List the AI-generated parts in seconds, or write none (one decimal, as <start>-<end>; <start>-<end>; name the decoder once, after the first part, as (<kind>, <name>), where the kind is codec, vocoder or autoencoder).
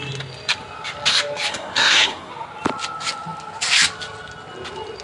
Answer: 1.5-2.3 (codec, SNAC)